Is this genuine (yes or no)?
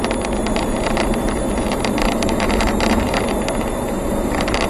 no